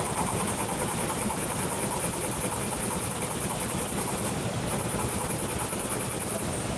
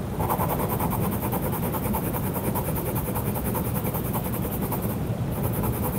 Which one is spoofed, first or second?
first